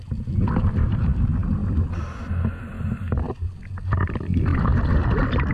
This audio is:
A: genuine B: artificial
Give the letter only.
A